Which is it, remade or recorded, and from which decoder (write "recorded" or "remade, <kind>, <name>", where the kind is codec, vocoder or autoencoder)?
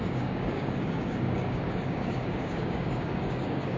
remade, codec, DAC